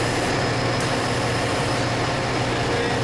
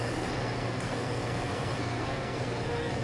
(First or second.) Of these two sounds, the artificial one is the second